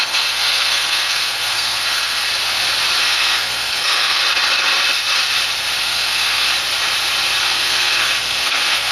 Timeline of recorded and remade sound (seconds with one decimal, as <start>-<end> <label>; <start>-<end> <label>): 0.0-2.3 remade; 2.3-3.0 recorded; 3.0-4.2 remade; 4.2-5.8 recorded; 5.8-6.5 remade; 6.5-7.4 recorded; 7.4-8.9 remade